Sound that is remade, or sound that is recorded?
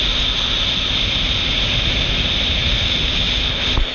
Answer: recorded